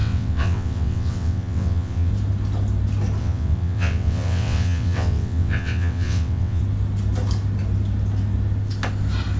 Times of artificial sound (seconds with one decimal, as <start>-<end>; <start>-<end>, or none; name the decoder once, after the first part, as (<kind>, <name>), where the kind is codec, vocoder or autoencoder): 0.0-2.1 (vocoder, WaveNeXt); 3.2-6.6